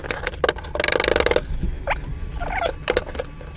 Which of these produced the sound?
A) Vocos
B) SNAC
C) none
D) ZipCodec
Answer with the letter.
C